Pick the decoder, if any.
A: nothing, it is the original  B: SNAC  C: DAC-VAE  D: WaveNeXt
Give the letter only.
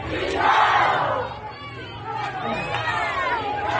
A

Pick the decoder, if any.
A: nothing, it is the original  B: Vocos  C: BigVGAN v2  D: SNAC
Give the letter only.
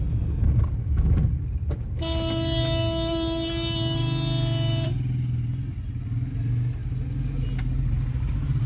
A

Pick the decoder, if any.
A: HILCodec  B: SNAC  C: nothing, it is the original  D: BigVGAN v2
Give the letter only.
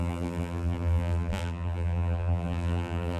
D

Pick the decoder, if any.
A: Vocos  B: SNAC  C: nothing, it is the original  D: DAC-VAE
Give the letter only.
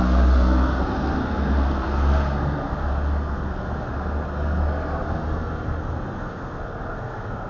B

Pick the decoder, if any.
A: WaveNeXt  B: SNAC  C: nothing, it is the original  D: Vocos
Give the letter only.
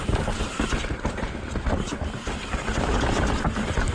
C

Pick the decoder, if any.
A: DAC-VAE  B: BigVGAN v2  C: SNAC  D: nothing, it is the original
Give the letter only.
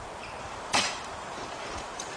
B